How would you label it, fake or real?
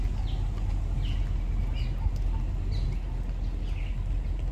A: real